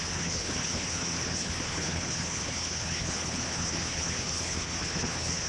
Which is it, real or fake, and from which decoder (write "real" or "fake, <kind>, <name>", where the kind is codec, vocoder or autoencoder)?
fake, codec, HILCodec